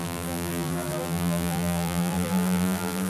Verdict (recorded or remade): remade